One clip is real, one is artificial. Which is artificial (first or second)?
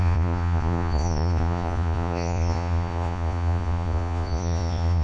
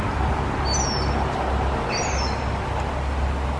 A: first